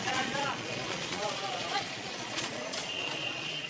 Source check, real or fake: fake